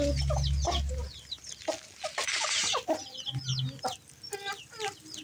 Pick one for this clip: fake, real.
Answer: real